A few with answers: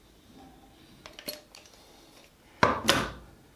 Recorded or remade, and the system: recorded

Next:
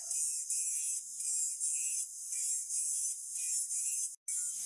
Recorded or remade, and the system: recorded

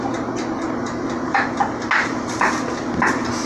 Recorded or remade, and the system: recorded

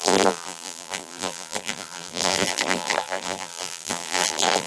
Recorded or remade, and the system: remade, vocoder, BigVGAN v2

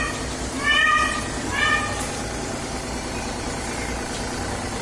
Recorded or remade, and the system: recorded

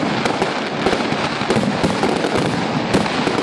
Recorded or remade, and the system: recorded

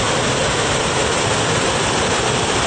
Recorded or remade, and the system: recorded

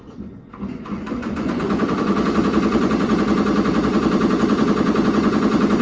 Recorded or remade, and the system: remade, vocoder, Vocos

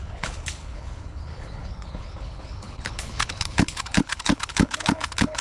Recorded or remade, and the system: remade, codec, HILCodec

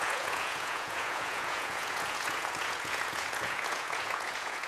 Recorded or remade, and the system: remade, vocoder, Vocos